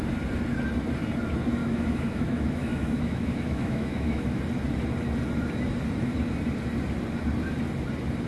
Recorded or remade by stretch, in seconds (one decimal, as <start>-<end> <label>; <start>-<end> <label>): 0.0-1.6 recorded; 1.6-4.4 remade; 4.4-8.3 recorded